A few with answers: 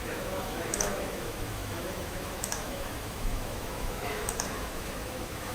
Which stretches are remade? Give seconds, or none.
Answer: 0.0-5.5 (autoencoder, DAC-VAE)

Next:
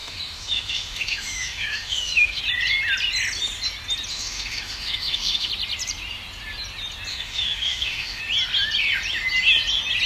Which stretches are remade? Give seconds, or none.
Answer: 0.0-2.4 (autoencoder, DAC-VAE); 4.1-5.5; 7.1-8.2

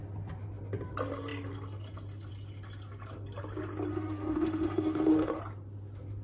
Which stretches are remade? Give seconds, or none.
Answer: 3.9-5.4 (autoencoder, DAC-VAE)

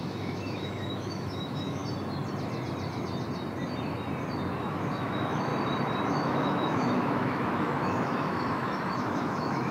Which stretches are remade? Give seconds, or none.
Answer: 0.0-1.8 (autoencoder, DAC-VAE); 4.6-5.5; 6.1-9.7

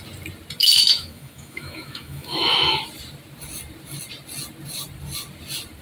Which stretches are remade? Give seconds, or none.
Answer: 0.6-2.8 (autoencoder, DAC-VAE)

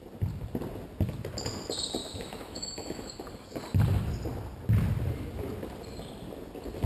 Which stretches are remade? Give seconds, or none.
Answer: 2.0-3.1 (autoencoder, DAC-VAE)

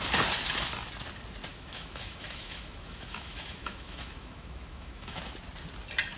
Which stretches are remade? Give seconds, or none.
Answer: 1.5-5.2 (autoencoder, DAC-VAE)